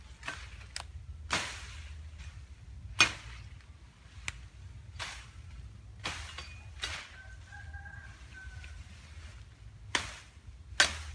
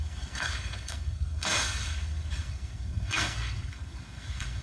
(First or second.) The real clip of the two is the first